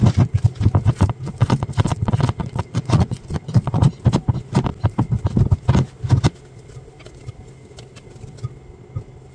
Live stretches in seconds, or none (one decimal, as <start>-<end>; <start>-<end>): 0.0-0.9; 3.9-9.3